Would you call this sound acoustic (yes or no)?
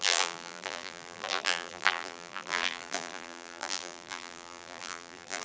no